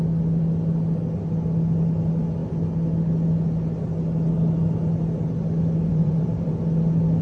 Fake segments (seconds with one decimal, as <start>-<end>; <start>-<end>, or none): 5.9-6.5